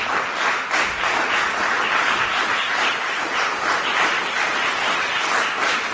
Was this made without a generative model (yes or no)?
yes